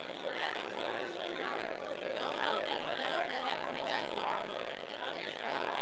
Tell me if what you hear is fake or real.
fake